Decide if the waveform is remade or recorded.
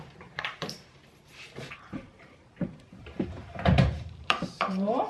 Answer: remade